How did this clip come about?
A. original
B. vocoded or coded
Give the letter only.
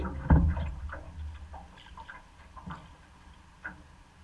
A